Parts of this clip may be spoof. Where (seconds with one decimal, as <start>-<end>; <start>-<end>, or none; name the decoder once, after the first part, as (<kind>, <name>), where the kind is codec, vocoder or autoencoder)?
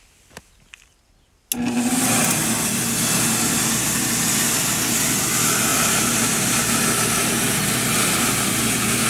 5.7-6.8 (vocoder, BigVGAN v2)